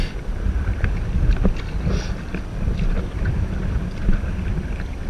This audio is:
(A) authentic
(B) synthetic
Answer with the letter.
A